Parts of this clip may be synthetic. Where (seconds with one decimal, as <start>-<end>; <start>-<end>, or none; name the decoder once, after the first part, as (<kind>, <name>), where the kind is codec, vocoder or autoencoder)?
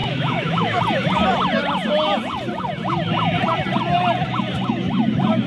0.0-0.8 (autoencoder, DAC-VAE)